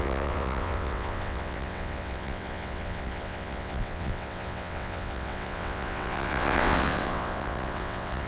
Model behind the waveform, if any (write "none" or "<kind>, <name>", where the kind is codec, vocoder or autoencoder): vocoder, WaveNeXt